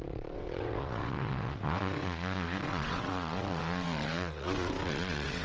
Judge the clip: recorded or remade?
remade